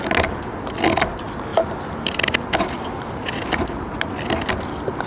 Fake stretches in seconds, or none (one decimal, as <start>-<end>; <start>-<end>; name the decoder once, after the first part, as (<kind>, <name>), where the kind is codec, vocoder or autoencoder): none